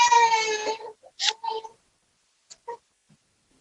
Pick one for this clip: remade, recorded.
recorded